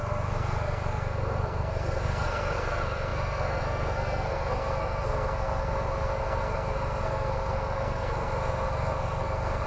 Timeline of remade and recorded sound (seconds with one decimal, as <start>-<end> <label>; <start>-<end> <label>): 0.0-9.7 remade